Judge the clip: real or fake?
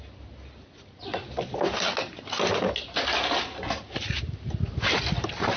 real